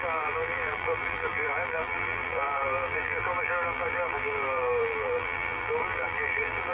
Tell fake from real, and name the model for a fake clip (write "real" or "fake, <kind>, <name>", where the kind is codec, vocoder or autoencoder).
fake, vocoder, BigVGAN v2